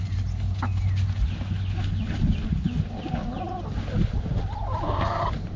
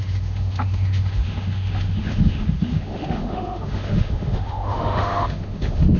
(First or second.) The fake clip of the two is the second